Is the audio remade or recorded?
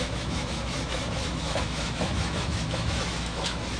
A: remade